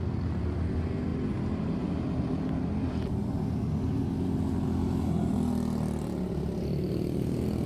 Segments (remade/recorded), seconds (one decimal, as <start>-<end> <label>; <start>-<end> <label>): 0.0-7.7 recorded